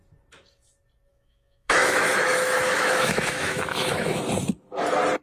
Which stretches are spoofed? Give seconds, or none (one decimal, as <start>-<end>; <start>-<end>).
1.1-4.2